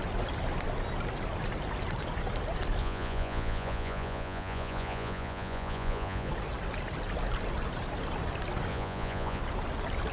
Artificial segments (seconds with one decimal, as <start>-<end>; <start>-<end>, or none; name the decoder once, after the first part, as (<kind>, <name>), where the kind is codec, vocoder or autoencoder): 2.8-6.3 (vocoder, Vocos); 8.7-9.4